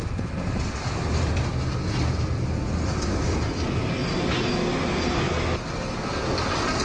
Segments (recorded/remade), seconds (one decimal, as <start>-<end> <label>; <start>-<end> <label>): 0.0-6.8 recorded